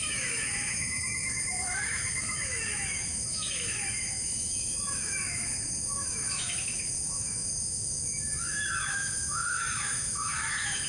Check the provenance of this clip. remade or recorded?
remade